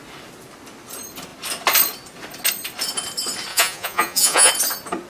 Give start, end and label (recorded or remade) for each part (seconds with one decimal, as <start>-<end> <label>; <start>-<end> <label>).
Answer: 0.0-3.5 recorded; 3.5-4.5 remade; 4.5-5.1 recorded